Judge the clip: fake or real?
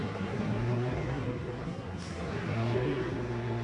fake